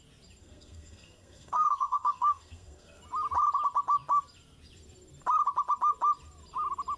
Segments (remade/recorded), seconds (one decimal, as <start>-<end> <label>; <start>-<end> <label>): 0.0-0.4 recorded; 0.4-3.0 remade; 3.0-7.0 recorded